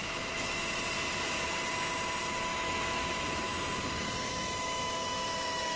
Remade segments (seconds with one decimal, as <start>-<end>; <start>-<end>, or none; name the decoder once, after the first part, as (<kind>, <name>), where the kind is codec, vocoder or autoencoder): 0.0-0.6 (autoencoder, DAC-VAE); 2.2-3.5; 4.3-5.8